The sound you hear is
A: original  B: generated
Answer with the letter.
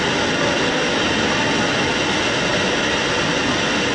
A